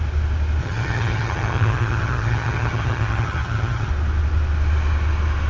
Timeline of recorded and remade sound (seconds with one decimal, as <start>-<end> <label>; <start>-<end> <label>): 0.0-0.6 recorded; 0.6-3.9 remade; 3.9-5.5 recorded